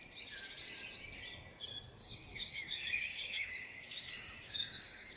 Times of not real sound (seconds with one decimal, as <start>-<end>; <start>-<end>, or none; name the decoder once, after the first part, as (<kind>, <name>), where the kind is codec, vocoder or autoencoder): 2.0-5.2 (codec, DAC)